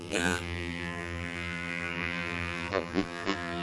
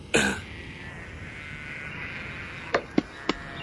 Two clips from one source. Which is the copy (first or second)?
first